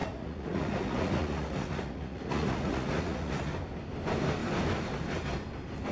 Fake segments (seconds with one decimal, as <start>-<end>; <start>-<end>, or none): 0.0-3.5